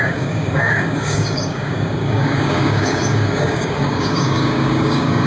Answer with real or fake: fake